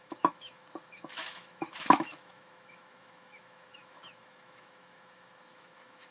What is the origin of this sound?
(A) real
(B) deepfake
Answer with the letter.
B